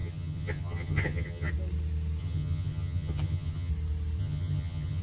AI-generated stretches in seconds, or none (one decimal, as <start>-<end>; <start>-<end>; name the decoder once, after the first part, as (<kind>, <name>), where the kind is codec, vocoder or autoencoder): 0.0-1.5 (vocoder, HiFi-GAN); 2.2-3.7; 4.2-5.0